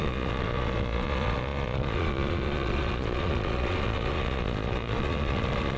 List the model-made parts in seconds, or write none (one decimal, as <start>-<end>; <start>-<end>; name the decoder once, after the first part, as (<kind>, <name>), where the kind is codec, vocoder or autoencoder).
0.0-5.8 (vocoder, Vocos)